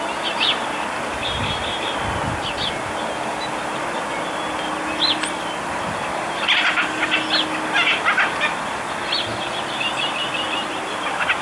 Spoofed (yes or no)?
no